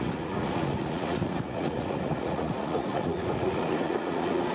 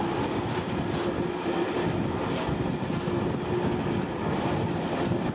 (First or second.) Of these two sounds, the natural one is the second